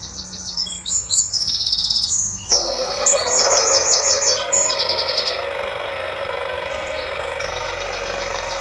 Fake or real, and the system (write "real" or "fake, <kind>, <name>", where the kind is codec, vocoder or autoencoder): fake, codec, SNAC